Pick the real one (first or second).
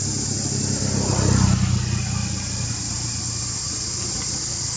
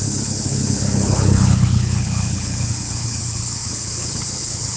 first